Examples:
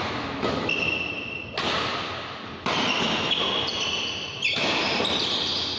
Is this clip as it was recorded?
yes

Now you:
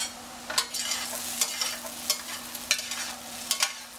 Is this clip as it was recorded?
yes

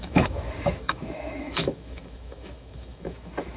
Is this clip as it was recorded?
no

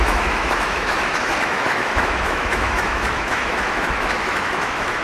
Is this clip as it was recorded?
no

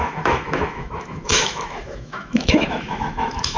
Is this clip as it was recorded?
no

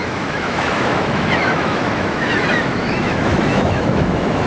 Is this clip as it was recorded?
no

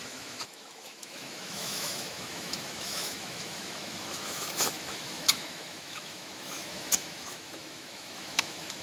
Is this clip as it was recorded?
no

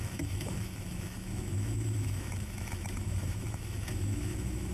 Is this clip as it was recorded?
no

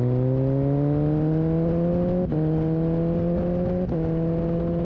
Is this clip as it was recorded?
yes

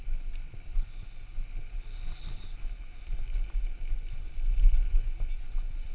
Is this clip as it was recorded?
yes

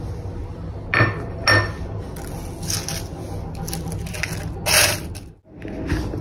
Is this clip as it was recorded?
yes